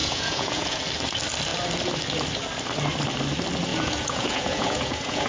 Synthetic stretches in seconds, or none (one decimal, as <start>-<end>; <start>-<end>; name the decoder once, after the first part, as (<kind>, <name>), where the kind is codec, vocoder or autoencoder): 0.0-0.8 (vocoder, Vocos); 3.7-5.3